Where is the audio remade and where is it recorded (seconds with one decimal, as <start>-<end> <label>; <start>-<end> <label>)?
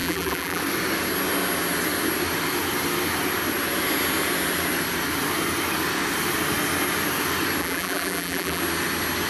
0.0-0.6 remade; 0.6-7.6 recorded; 7.6-8.6 remade; 8.6-9.3 recorded